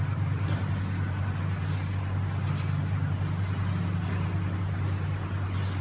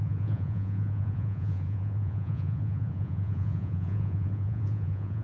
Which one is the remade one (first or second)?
second